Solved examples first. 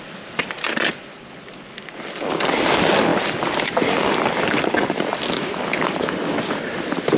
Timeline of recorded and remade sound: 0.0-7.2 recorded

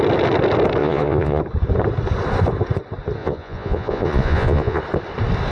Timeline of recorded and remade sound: 0.0-0.8 recorded; 0.8-1.4 remade; 1.4-3.2 recorded; 3.2-4.8 remade; 4.8-5.5 recorded